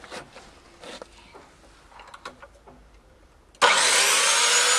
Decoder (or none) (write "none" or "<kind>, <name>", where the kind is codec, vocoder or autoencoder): none